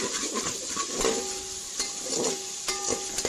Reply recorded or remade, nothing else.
recorded